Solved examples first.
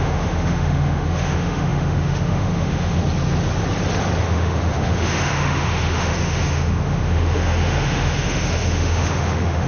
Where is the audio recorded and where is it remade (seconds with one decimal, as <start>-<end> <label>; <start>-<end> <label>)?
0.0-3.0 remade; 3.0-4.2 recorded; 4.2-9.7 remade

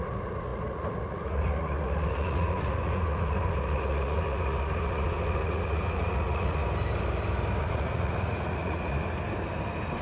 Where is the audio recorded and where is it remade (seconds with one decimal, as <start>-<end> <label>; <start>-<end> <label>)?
0.0-6.6 remade; 6.6-7.6 recorded; 7.6-9.0 remade; 9.0-10.0 recorded

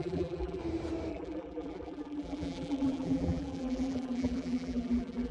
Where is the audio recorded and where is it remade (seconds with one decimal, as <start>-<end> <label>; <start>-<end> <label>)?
0.0-0.6 remade; 0.6-1.1 recorded; 1.1-5.3 remade

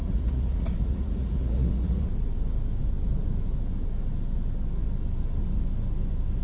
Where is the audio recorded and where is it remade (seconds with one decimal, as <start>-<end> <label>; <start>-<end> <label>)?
0.0-2.1 remade; 2.1-6.4 recorded

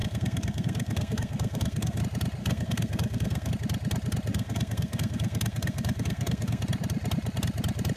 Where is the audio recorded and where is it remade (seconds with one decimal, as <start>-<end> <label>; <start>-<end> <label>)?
0.0-2.0 remade; 2.0-2.4 recorded; 2.4-3.5 remade; 3.5-4.3 recorded; 4.3-6.6 remade; 6.6-8.0 recorded

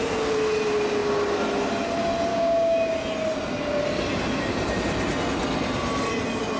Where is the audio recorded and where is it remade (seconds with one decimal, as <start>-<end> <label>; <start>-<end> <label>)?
0.0-2.3 recorded; 2.3-2.9 remade; 2.9-6.6 recorded